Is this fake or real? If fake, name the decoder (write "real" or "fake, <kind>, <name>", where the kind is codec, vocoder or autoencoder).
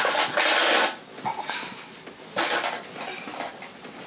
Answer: real